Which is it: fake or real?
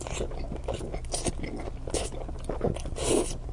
real